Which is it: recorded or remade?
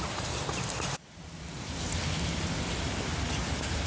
recorded